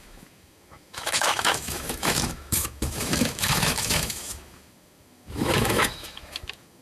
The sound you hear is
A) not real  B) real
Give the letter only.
A